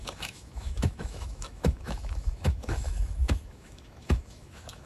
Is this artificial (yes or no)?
yes